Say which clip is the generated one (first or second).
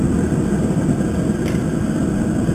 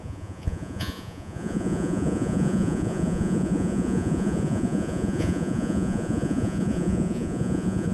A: second